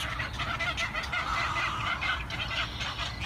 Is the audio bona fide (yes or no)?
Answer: yes